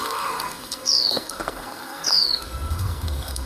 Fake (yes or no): yes